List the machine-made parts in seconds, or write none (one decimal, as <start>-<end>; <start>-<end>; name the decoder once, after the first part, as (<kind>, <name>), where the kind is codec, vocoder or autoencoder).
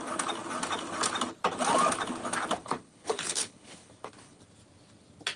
2.6-4.4 (codec, HILCodec)